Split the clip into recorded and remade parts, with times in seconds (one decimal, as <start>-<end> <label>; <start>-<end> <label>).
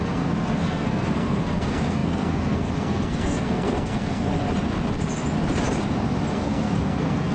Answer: 0.0-4.3 remade; 4.3-6.3 recorded; 6.3-7.3 remade